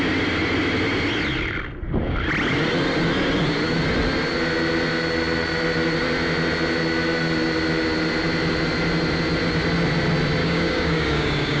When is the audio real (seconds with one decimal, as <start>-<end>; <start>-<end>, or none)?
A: 0.0-10.4